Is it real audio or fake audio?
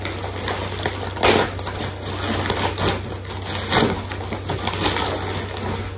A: real